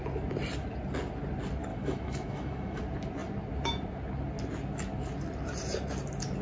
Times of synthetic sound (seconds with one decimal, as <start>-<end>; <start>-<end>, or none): 1.7-2.8